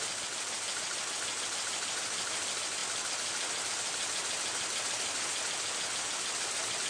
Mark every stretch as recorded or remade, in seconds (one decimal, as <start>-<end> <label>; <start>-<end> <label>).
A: 0.0-6.9 recorded